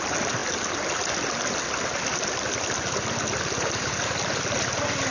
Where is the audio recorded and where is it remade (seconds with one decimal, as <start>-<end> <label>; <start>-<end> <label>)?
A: 0.0-5.1 recorded

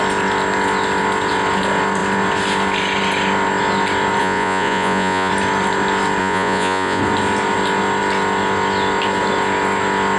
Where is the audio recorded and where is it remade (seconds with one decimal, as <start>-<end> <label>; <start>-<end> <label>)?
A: 0.0-4.2 recorded; 4.2-5.3 remade; 5.3-6.2 recorded; 6.2-7.0 remade; 7.0-10.2 recorded

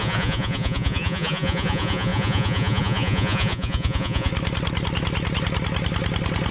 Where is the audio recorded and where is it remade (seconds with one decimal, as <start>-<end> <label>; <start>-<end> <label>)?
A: 0.0-4.3 remade; 4.3-6.5 recorded

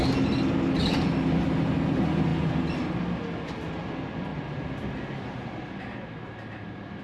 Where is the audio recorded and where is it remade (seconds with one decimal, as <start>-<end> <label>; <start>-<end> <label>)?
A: 0.0-7.0 recorded